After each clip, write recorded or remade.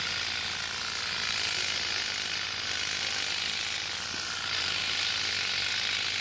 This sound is recorded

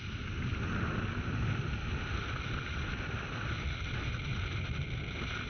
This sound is recorded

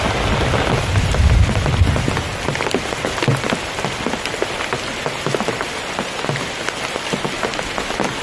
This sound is recorded